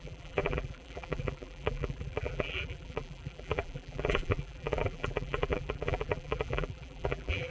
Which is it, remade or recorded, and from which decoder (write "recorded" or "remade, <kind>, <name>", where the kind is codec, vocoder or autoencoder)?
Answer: remade, vocoder, BigVGAN v2